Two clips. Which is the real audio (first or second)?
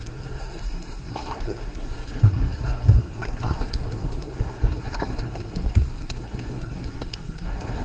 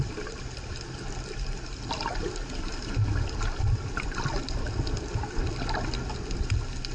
second